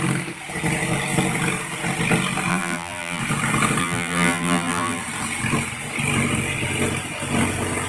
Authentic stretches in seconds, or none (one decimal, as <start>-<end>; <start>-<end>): 0.0-2.5; 3.2-3.8; 5.0-7.9